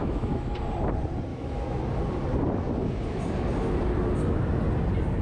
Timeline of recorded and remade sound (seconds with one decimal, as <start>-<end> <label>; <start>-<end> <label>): 0.0-0.5 remade; 0.5-1.3 recorded; 1.3-1.8 remade; 1.8-5.2 recorded